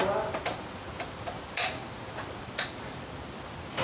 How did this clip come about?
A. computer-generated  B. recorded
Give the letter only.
B